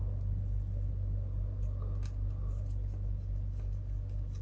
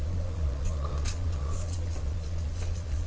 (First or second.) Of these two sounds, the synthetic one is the second